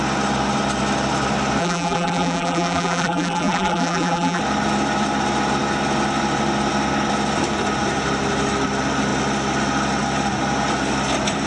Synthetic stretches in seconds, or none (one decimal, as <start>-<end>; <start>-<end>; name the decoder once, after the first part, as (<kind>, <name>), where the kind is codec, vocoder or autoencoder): 1.6-4.4 (vocoder, BigVGAN v2)